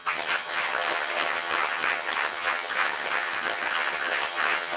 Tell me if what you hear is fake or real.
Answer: fake